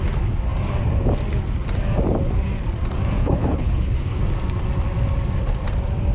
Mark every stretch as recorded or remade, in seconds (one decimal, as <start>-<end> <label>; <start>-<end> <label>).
0.0-3.2 recorded; 3.2-4.2 remade; 4.2-6.1 recorded

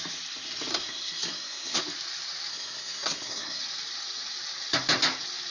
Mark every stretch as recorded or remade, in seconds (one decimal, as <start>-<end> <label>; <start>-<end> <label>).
0.0-0.7 recorded; 0.7-1.8 remade; 1.8-2.5 recorded; 2.5-3.6 remade; 3.6-5.5 recorded

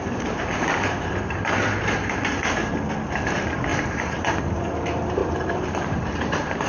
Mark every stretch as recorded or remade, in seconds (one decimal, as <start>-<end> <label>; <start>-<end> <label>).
0.0-1.5 remade; 1.5-3.2 recorded; 3.2-6.7 remade

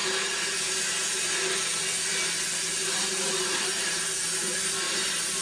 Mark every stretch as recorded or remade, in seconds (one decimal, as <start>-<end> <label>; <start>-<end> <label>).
0.0-2.8 recorded; 2.8-4.2 remade; 4.2-5.4 recorded

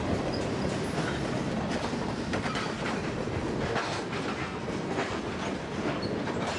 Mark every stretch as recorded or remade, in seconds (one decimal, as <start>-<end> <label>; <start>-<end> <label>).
0.0-4.4 recorded; 4.4-5.2 remade; 5.2-6.6 recorded

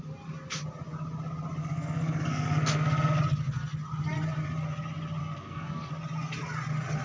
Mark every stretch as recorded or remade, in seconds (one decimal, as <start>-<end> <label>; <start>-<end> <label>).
0.0-1.6 recorded; 1.6-3.2 remade; 3.2-5.2 recorded; 5.2-5.9 remade; 5.9-7.0 recorded

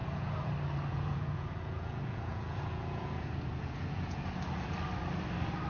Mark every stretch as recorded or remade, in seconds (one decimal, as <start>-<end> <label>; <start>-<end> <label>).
0.0-0.5 remade; 0.5-0.9 recorded; 0.9-4.3 remade; 4.3-5.7 recorded

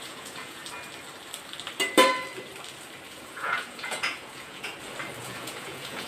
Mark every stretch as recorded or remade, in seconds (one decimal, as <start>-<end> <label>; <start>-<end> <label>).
0.0-0.6 remade; 0.6-3.1 recorded; 3.1-4.7 remade; 4.7-5.2 recorded; 5.2-6.1 remade